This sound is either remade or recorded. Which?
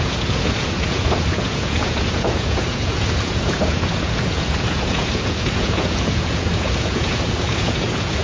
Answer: remade